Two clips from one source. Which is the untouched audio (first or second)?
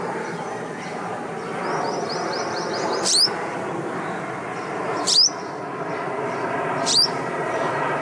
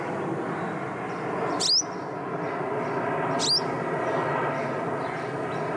second